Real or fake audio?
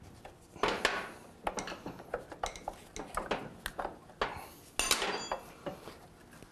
real